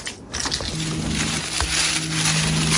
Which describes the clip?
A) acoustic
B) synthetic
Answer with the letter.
A